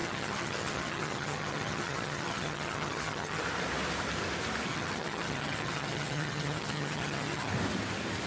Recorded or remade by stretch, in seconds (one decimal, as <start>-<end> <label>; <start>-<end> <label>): 0.0-3.4 remade; 3.4-4.7 recorded; 4.7-7.5 remade; 7.5-8.3 recorded